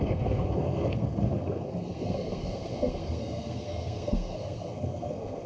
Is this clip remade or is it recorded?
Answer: remade